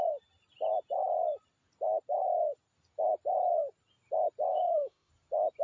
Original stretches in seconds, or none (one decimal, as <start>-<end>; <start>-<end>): 0.0-4.5; 5.1-5.6